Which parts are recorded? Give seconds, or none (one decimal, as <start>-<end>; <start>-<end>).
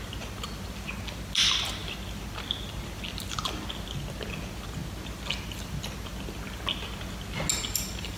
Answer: 0.0-8.2